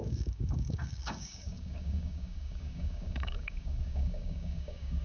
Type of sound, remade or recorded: remade